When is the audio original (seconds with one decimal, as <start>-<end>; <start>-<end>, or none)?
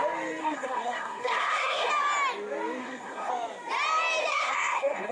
0.0-0.4; 1.9-2.8; 3.3-4.3